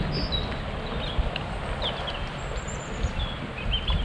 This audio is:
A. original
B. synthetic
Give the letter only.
A